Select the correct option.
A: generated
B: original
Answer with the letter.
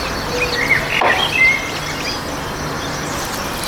B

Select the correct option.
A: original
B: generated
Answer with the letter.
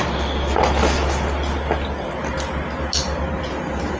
A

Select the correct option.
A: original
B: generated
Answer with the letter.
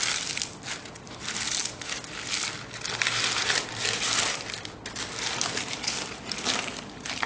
A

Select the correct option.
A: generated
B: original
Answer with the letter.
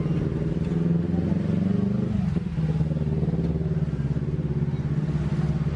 B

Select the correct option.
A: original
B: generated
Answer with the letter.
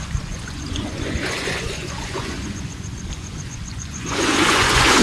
B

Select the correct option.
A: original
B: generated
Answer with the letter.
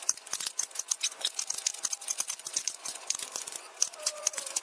B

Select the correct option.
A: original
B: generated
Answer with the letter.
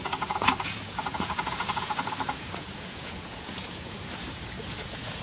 B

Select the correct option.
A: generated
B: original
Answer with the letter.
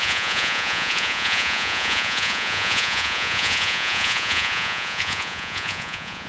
A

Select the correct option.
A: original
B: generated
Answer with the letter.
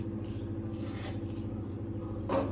A